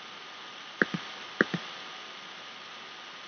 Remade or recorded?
recorded